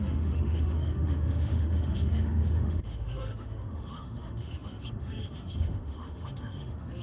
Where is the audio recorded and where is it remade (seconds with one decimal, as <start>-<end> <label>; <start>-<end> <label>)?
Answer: 0.0-7.0 remade

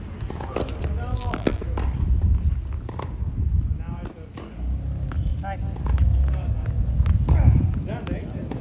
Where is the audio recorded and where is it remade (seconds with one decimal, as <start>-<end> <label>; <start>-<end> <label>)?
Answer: 0.0-1.1 recorded; 1.1-1.6 remade; 1.6-8.6 recorded